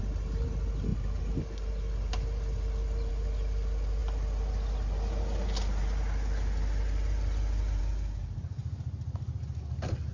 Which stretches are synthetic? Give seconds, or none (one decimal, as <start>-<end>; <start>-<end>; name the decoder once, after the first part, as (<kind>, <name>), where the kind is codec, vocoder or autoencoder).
none